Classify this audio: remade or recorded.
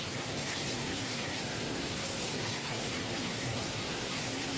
remade